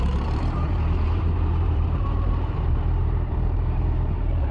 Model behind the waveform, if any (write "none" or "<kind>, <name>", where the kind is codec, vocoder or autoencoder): vocoder, BigVGAN v2